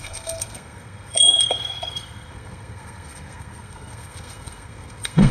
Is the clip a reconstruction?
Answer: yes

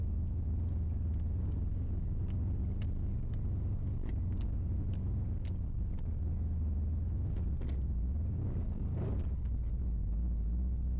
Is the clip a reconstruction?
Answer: no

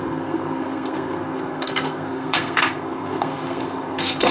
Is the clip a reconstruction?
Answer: yes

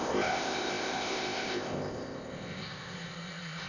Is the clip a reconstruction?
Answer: yes